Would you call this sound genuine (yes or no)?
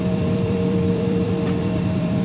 no